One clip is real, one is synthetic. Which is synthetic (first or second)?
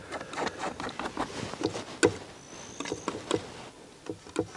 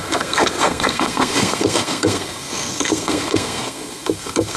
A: second